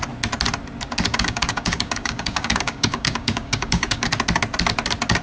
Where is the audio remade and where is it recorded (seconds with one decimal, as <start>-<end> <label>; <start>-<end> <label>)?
0.0-1.1 recorded; 1.1-4.1 remade; 4.1-5.2 recorded